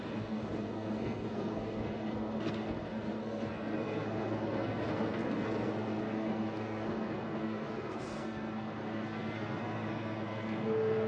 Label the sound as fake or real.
fake